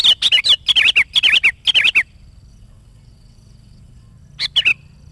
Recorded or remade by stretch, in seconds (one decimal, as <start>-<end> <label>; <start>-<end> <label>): 0.0-2.5 recorded; 2.5-4.1 remade; 4.1-5.1 recorded